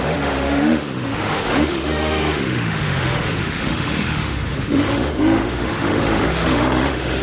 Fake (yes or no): yes